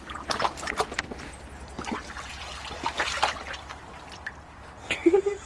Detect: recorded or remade recorded